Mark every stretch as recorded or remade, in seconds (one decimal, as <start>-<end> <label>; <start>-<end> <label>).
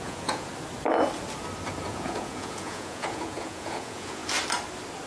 0.0-0.5 remade; 0.5-1.9 recorded; 1.9-4.2 remade; 4.2-5.1 recorded